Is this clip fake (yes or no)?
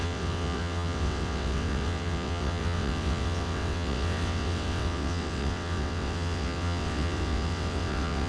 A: yes